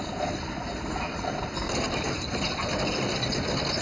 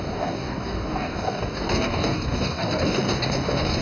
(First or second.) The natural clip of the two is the first